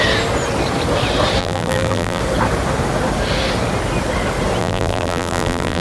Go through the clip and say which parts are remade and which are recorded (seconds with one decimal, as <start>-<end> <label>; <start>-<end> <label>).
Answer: 0.0-1.4 recorded; 1.4-2.2 remade; 2.2-4.6 recorded; 4.6-5.8 remade